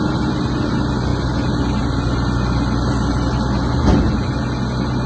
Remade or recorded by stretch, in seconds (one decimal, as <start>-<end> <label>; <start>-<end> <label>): 0.0-5.1 recorded